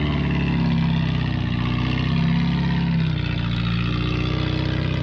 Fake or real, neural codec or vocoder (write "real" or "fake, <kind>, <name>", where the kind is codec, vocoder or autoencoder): real